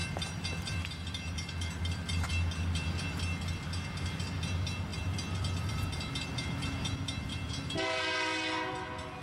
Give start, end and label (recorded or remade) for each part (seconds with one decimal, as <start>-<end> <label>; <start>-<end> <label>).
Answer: 0.0-2.3 remade; 2.3-4.9 recorded; 4.9-7.5 remade; 7.5-9.2 recorded